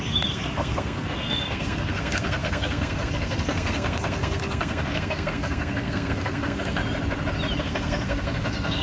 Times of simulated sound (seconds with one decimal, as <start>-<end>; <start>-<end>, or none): 0.0-6.8; 7.6-8.8